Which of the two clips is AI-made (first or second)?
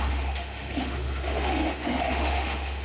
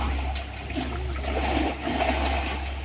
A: first